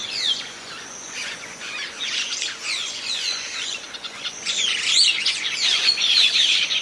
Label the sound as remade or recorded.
remade